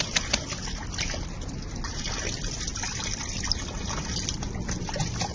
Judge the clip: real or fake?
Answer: real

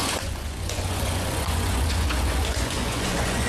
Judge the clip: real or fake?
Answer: fake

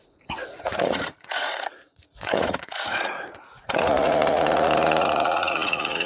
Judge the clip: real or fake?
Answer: fake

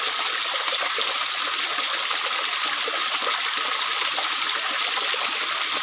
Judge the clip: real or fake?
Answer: real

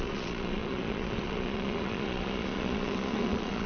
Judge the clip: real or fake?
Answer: fake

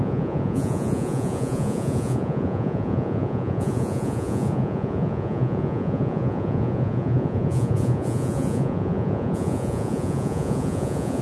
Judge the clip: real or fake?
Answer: fake